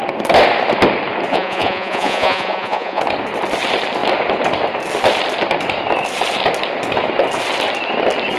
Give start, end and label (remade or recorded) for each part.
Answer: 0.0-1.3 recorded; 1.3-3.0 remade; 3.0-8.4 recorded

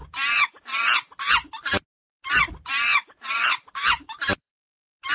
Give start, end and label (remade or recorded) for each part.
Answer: 0.0-2.9 recorded; 2.9-4.5 remade; 4.5-5.1 recorded

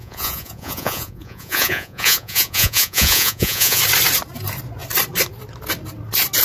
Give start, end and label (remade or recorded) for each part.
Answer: 0.0-3.8 remade; 3.8-6.4 recorded

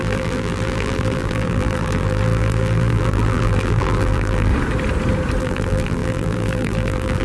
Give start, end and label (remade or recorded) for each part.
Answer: 0.0-4.5 remade; 4.5-5.4 recorded; 5.4-7.2 remade

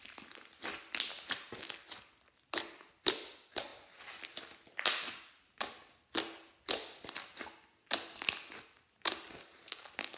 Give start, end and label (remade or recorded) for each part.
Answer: 0.0-10.2 recorded